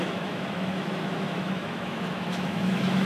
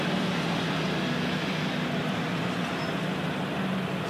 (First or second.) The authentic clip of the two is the second